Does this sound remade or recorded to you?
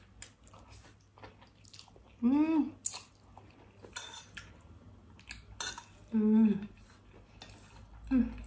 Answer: recorded